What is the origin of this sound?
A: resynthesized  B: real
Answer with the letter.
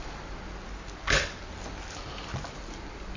B